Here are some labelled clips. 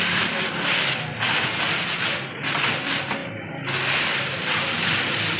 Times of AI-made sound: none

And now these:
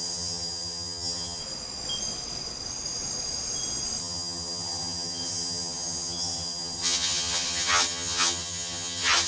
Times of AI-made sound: 0.0-1.4 (vocoder, HiFi-GAN); 4.0-9.3

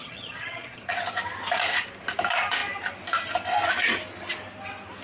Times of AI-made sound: 0.0-0.9 (vocoder, HiFi-GAN)

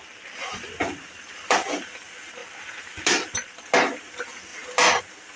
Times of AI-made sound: none

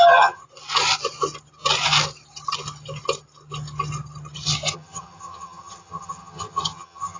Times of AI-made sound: 0.0-0.4 (vocoder, HiFi-GAN); 4.7-7.2

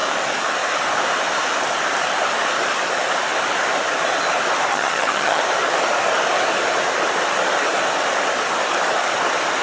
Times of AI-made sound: 4.7-5.4 (vocoder, HiFi-GAN)

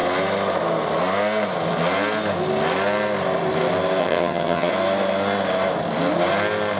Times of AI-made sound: 4.0-4.7 (vocoder, HiFi-GAN)

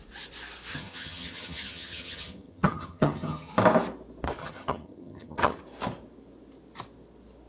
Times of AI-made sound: 0.7-3.5 (vocoder, HiFi-GAN); 4.4-5.6